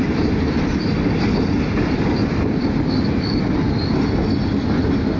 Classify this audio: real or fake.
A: real